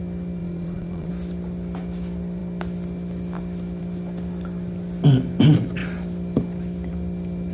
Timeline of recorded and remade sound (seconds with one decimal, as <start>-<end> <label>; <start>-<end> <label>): 0.0-0.4 recorded; 0.4-1.1 remade; 1.1-7.5 recorded